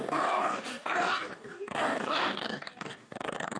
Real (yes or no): no